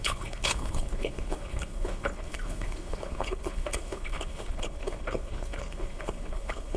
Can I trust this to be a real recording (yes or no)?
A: no